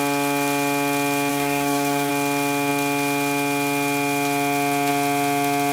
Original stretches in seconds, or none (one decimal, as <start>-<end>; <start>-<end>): 0.0-1.3; 2.1-5.7

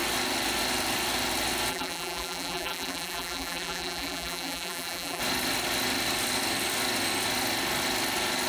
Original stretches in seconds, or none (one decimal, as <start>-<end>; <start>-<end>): 0.0-1.7; 5.2-8.5

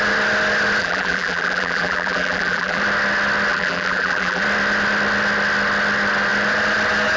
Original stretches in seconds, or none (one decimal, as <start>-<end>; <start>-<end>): 0.0-0.8; 2.8-3.5; 4.4-7.2

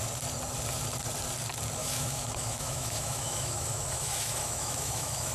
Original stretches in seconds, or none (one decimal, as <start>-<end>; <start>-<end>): 0.0-1.8

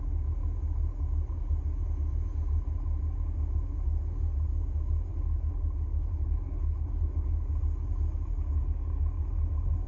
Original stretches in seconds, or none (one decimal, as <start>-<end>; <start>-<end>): 0.0-5.1; 7.5-9.9